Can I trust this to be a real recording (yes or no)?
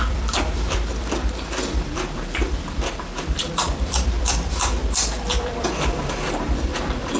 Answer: no